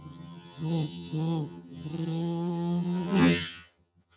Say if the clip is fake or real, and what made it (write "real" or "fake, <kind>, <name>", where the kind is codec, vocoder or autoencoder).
fake, vocoder, HiFi-GAN